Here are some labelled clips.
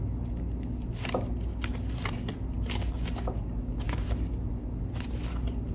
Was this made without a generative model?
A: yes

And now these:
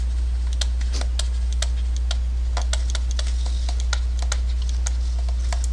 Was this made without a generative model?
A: yes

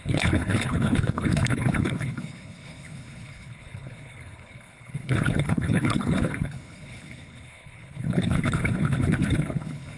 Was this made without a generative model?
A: no